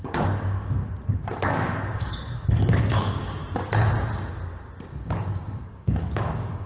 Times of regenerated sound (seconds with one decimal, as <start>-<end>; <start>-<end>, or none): 0.0-0.8; 1.4-3.4; 4.9-6.7